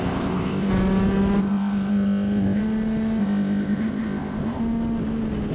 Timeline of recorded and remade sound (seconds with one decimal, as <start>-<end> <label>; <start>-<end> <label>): 0.0-0.7 remade; 0.7-1.4 recorded; 1.4-2.6 remade; 2.6-3.2 recorded; 3.2-4.6 remade; 4.6-5.5 recorded

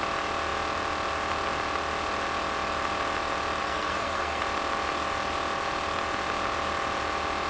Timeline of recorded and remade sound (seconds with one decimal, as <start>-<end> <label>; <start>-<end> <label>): 0.0-3.6 recorded; 3.6-4.4 remade; 4.4-7.5 recorded

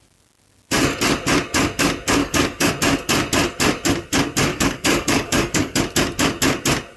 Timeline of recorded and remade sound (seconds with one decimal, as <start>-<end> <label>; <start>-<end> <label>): 0.0-2.2 recorded; 2.2-2.7 remade; 2.7-4.5 recorded; 4.5-5.8 remade; 5.8-7.0 recorded

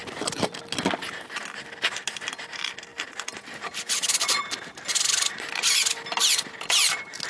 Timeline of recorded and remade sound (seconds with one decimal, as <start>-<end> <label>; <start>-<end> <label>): 0.0-7.3 recorded